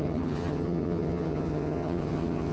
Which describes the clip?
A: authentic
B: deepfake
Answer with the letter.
B